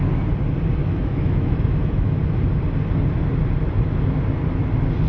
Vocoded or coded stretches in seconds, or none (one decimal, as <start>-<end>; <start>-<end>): 0.8-2.2